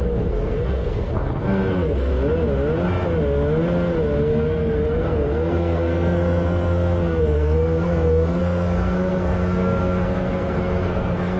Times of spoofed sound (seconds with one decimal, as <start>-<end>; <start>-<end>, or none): 0.0-2.1; 4.2-11.4